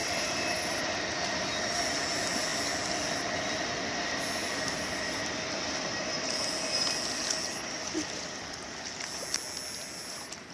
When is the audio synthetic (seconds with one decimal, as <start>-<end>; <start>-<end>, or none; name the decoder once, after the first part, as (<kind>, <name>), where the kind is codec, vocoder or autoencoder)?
0.0-0.8 (vocoder, BigVGAN v2)